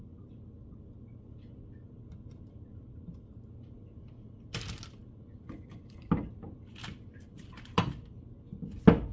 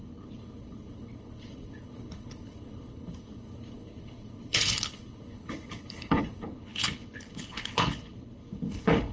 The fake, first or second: second